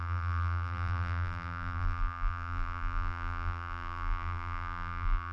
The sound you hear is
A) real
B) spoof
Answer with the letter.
B